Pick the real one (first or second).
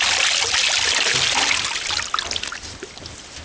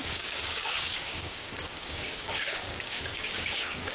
first